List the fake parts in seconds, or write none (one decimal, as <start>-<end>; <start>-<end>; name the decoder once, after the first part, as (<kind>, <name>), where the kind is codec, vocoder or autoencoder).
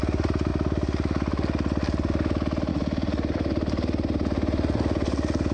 none